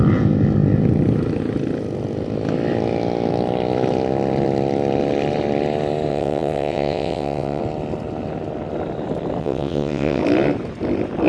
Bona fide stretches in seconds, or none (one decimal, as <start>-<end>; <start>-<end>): 0.0-6.1; 7.6-9.4; 10.2-11.3